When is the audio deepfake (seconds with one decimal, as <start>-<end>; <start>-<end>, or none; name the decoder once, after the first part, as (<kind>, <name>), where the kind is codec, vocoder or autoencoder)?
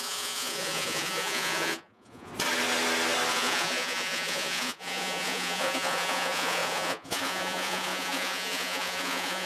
0.0-2.3 (vocoder, Vocos); 3.3-9.5